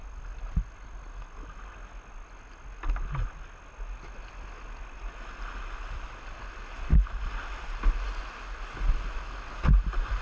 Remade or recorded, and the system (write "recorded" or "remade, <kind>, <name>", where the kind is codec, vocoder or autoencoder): recorded